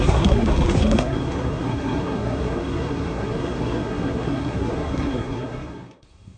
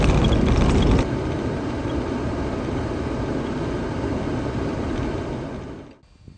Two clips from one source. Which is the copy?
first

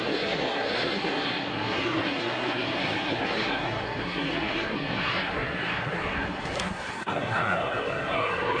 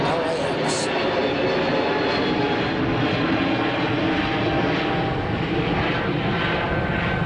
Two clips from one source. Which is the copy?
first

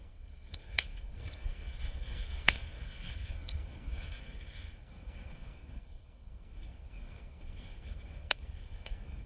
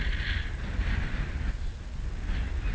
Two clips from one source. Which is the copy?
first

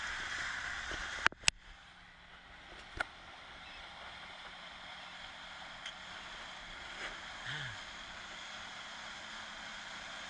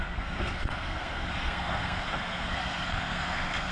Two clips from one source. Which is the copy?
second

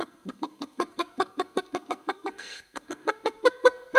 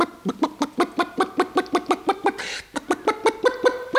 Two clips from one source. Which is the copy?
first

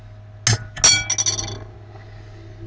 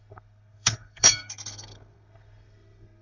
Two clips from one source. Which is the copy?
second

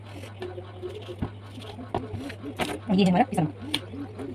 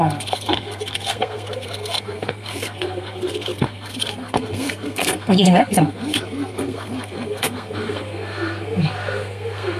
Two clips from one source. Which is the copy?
second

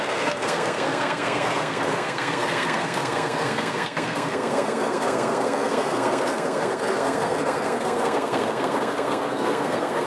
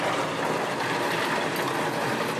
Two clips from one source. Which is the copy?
first